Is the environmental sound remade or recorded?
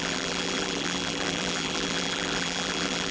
remade